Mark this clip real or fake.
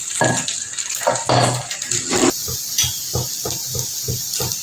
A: real